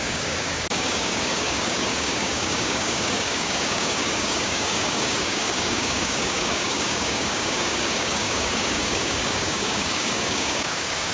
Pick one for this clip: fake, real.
fake